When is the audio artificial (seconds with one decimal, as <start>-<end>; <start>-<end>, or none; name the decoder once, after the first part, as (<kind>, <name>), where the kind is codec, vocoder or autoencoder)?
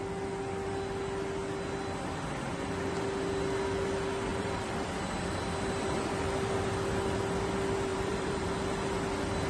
4.3-5.0 (vocoder, BigVGAN v2); 7.9-8.6